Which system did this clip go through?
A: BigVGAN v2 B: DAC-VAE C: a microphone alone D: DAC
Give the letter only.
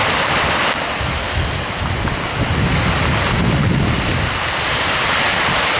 C